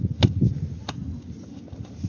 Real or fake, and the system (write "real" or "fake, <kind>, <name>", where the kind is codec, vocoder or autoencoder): real